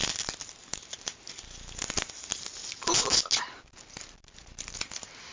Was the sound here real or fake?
real